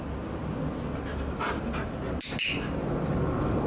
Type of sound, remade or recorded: recorded